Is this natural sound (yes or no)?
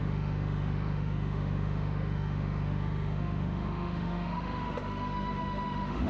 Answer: no